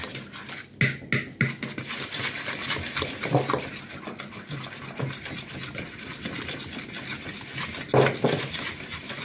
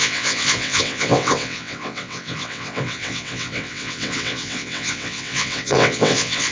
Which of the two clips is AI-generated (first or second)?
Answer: second